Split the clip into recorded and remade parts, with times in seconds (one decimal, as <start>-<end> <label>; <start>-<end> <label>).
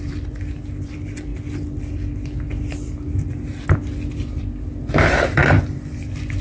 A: 0.0-1.3 remade; 1.3-5.1 recorded; 5.1-6.4 remade